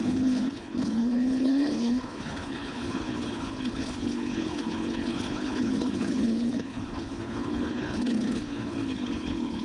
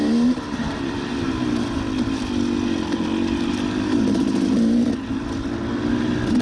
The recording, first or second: second